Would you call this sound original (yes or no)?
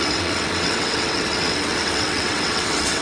no